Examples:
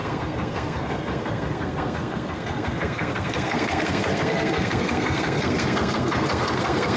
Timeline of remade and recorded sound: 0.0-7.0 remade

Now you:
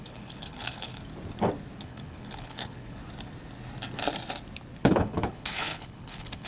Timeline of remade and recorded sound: 0.0-1.0 remade; 1.0-1.8 recorded; 1.8-3.0 remade; 3.0-4.8 recorded; 4.8-6.5 remade

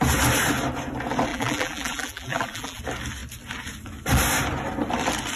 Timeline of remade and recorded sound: 0.0-1.3 recorded; 1.3-2.8 remade; 2.8-5.4 recorded